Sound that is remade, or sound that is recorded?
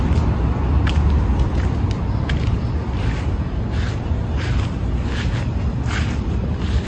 recorded